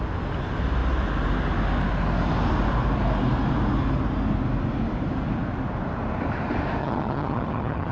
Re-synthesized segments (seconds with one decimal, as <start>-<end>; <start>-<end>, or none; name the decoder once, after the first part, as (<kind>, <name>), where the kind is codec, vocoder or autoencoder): 6.8-7.9 (vocoder, HiFi-GAN)